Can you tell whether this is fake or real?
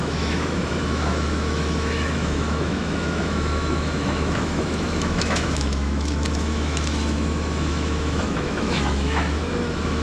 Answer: fake